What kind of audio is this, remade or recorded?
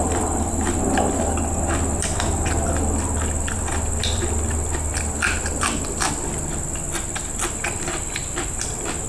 recorded